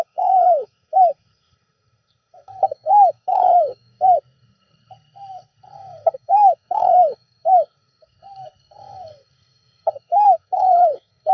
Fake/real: fake